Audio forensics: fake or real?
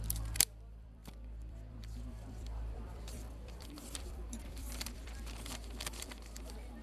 fake